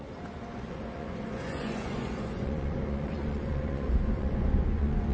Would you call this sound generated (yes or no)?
yes